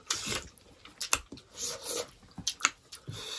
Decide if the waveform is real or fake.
real